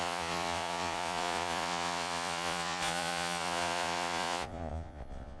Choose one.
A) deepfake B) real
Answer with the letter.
A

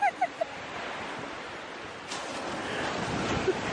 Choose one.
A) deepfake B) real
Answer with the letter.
B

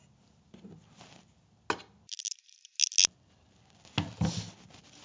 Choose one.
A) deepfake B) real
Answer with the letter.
B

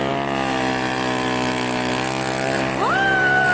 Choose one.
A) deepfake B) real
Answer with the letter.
B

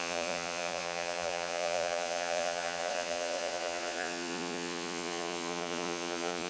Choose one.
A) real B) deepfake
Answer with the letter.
B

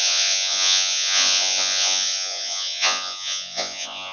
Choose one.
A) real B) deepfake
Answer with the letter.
B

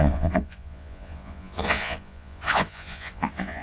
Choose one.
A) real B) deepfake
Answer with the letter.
B